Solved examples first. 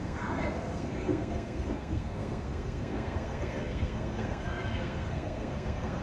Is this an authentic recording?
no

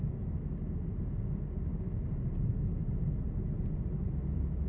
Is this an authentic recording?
yes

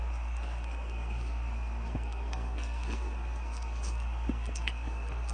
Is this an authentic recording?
no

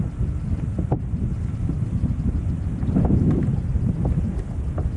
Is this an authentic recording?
yes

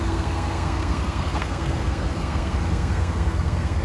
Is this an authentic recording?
no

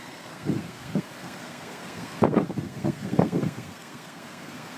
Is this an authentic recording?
no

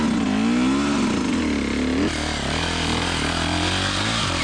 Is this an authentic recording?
yes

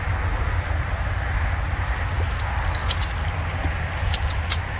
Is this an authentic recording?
yes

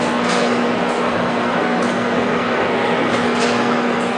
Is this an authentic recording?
no